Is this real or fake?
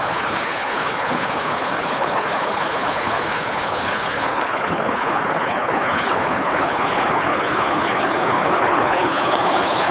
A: fake